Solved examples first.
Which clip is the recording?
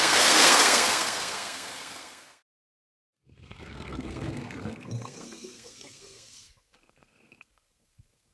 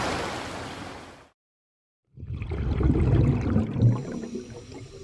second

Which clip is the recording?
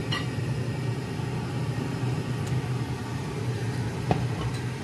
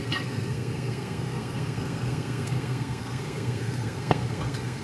first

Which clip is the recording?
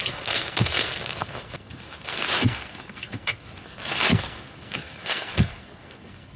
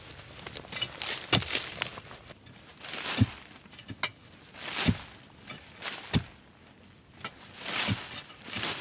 second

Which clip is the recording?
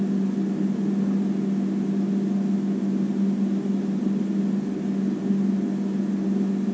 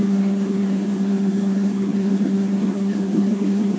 first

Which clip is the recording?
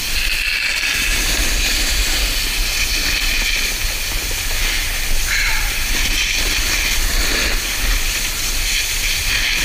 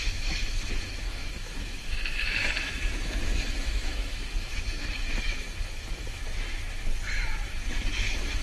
first